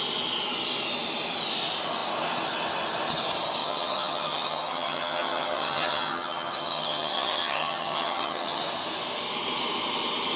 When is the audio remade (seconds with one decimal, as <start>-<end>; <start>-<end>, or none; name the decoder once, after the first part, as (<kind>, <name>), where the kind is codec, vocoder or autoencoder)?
3.6-8.6 (vocoder, HiFi-GAN)